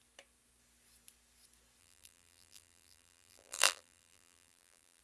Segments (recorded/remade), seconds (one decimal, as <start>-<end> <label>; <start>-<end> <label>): 0.0-1.8 recorded; 1.8-5.0 remade